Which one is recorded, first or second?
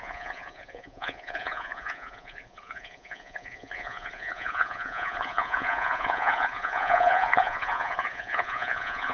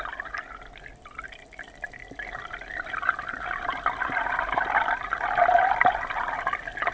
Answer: second